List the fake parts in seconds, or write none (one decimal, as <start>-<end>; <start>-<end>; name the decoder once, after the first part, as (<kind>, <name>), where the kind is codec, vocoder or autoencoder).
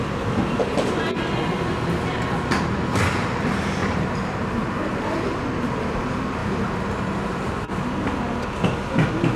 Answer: 3.8-5.4 (vocoder, BigVGAN v2); 6.4-8.2